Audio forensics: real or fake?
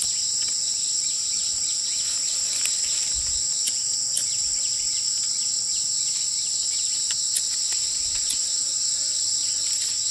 real